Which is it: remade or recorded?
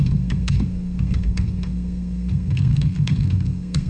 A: remade